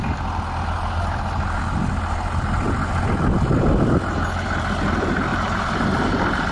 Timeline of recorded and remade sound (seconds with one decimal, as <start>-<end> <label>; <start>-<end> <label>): 0.0-5.3 recorded; 5.3-6.1 remade; 6.1-6.5 recorded